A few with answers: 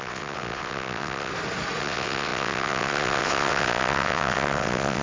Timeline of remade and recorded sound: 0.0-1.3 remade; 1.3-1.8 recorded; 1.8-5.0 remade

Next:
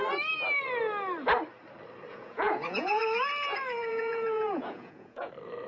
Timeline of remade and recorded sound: 0.0-2.1 recorded; 2.1-3.0 remade; 3.0-3.9 recorded; 3.9-5.3 remade; 5.3-5.7 recorded

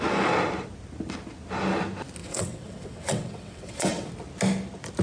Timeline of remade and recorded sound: 0.0-2.2 recorded; 2.2-4.1 remade; 4.1-5.0 recorded

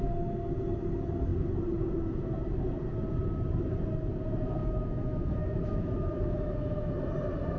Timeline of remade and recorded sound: 0.0-4.6 recorded; 4.6-6.9 remade; 6.9-7.6 recorded

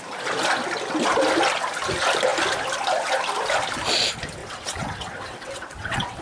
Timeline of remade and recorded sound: 0.0-4.4 recorded; 4.4-6.2 remade

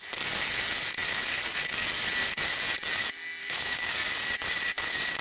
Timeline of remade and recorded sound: 0.0-3.4 recorded; 3.4-3.9 remade; 3.9-5.2 recorded

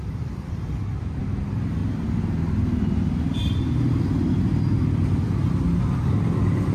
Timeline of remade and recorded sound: 0.0-1.8 remade; 1.8-5.8 recorded; 5.8-6.7 remade

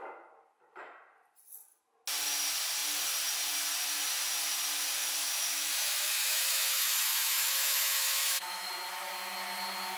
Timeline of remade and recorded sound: 0.0-5.2 recorded; 5.2-8.7 remade; 8.7-10.0 recorded